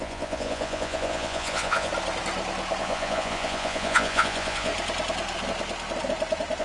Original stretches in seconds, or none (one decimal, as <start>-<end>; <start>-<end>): 1.9-2.8; 4.7-6.6